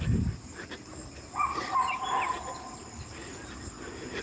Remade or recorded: recorded